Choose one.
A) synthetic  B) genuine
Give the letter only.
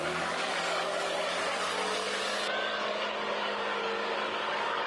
A